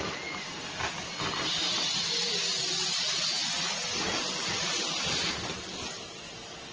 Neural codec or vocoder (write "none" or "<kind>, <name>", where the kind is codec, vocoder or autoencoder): none